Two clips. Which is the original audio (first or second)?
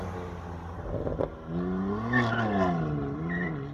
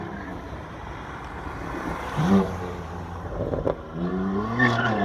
first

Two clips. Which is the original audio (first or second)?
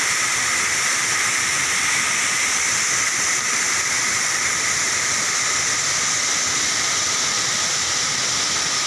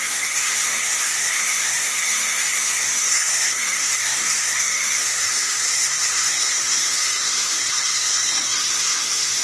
first